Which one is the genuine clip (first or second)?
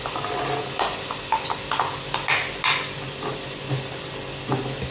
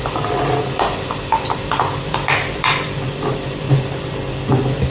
first